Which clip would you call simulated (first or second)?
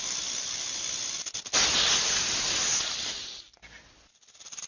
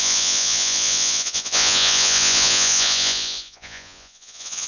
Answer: second